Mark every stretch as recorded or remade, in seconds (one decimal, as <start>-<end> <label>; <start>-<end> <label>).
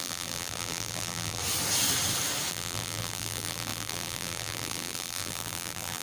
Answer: 0.0-1.4 remade; 1.4-2.5 recorded; 2.5-6.0 remade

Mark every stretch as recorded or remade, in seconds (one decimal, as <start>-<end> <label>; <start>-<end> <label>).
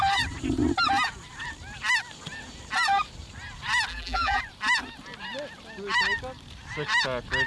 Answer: 0.0-3.9 recorded; 3.9-4.4 remade; 4.4-7.5 recorded